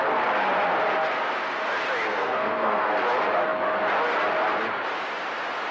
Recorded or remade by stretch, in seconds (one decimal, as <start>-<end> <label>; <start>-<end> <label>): 0.0-2.1 recorded; 2.1-2.9 remade; 2.9-5.7 recorded